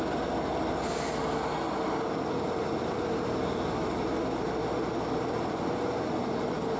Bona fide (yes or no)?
yes